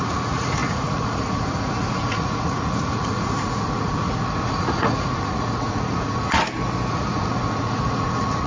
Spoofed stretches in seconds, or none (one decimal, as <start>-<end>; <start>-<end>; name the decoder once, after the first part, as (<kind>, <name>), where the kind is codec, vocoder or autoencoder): 0.0-6.4 (vocoder, Vocos); 6.9-8.5